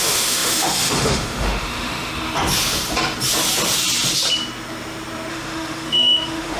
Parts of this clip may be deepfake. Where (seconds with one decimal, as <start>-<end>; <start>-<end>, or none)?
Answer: 0.0-2.1; 5.3-6.6